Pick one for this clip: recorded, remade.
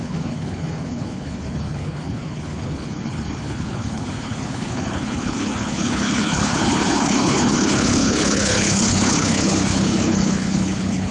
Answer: remade